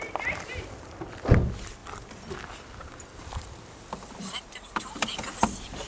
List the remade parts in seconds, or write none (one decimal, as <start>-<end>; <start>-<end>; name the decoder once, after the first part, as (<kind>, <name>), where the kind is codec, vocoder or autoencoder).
1.8-5.3 (vocoder, BigVGAN v2)